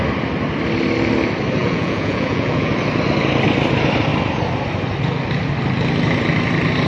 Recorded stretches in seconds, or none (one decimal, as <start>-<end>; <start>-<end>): 0.0-1.6; 2.7-6.9